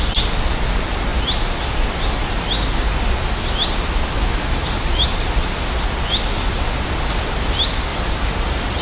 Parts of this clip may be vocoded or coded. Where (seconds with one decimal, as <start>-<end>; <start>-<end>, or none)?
7.9-8.8